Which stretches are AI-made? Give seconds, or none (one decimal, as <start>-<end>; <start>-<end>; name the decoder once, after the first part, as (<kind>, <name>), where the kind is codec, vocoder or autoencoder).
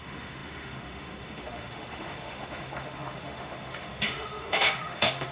0.0-5.3 (autoencoder, DAC-VAE)